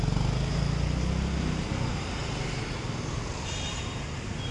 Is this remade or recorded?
recorded